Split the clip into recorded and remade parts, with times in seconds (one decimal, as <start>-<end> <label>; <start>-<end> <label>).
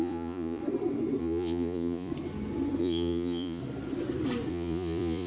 0.0-0.6 remade; 0.6-1.2 recorded; 1.2-2.1 remade; 2.1-2.8 recorded; 2.8-3.6 remade; 3.6-4.5 recorded; 4.5-5.3 remade